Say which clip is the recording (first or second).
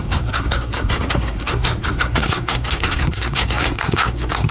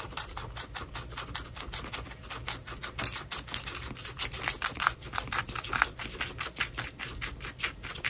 second